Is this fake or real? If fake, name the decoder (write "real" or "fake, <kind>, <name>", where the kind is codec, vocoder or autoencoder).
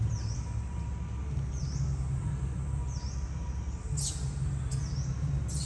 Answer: real